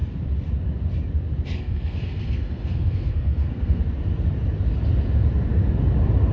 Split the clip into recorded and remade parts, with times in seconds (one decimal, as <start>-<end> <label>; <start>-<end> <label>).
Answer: 0.0-1.5 recorded; 1.5-3.8 remade; 3.8-6.3 recorded